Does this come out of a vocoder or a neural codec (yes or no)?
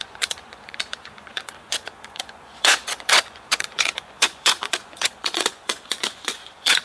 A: yes